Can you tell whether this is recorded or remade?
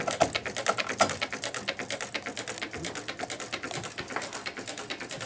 recorded